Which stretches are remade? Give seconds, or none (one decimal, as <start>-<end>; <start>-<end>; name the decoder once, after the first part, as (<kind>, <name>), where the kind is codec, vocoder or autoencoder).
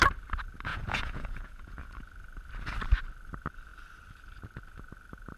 0.7-2.0 (vocoder, Vocos)